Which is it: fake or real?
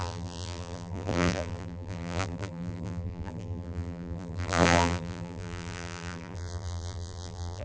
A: fake